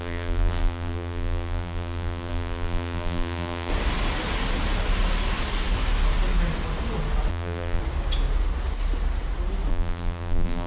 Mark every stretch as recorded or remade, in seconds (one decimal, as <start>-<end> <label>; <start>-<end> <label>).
0.0-3.7 remade; 3.7-7.3 recorded; 7.3-7.8 remade; 7.8-9.7 recorded; 9.7-10.7 remade